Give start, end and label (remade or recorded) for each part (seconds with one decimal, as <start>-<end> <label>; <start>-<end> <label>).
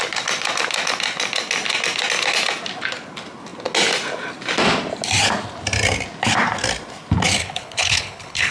0.0-7.4 recorded; 7.4-8.5 remade